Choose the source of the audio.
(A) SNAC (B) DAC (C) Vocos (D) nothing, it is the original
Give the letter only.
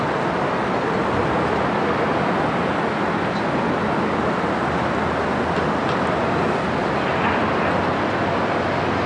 D